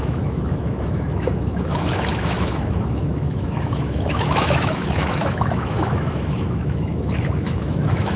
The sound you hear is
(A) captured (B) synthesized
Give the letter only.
B